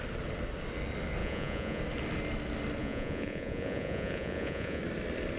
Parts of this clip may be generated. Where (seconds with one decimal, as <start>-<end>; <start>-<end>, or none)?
1.2-1.8; 2.8-4.8